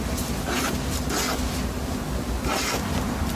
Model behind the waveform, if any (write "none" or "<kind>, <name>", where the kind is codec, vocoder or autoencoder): none